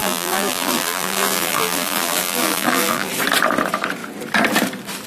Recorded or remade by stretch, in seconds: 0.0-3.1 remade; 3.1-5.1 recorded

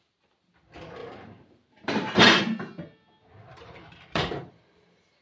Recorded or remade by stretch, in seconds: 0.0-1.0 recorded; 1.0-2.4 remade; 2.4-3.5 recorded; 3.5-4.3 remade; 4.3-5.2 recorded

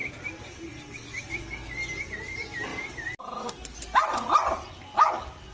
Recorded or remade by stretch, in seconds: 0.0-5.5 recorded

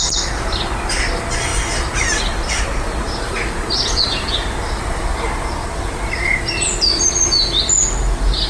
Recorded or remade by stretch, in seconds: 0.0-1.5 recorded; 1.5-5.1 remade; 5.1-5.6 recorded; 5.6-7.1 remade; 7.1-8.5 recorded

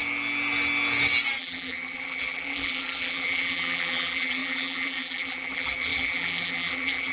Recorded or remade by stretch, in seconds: 0.0-1.4 recorded; 1.4-7.1 remade

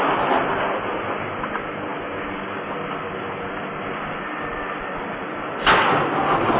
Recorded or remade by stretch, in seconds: 0.0-4.5 recorded; 4.5-5.1 remade; 5.1-6.6 recorded

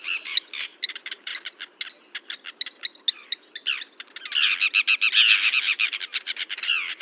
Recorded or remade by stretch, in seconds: 0.0-1.3 remade; 1.3-5.5 recorded; 5.5-7.0 remade